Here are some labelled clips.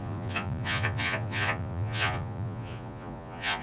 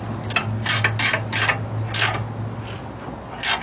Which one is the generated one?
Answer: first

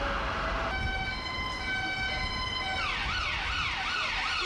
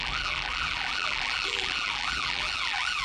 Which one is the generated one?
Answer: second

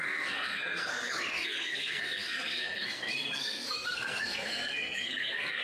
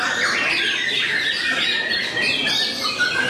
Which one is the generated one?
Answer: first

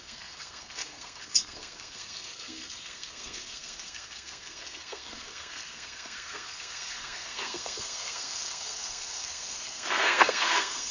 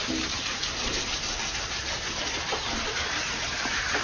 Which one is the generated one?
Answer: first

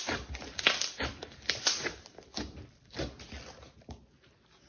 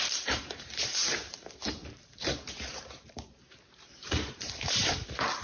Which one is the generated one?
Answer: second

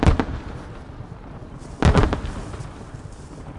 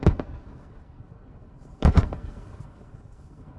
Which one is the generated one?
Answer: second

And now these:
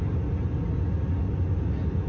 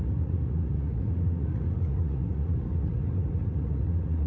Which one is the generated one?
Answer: second